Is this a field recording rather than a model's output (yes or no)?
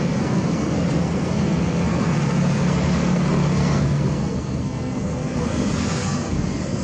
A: no